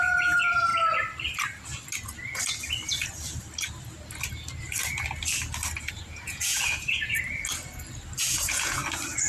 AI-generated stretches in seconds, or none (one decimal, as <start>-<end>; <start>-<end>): 0.0-0.7; 5.9-7.1; 8.2-8.8

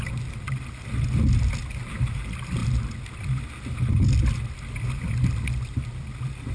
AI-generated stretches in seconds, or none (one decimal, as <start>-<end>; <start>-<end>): none

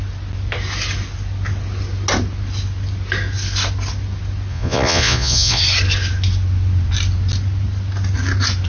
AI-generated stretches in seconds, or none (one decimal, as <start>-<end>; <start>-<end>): 4.5-5.6